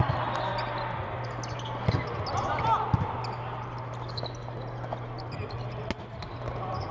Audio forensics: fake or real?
real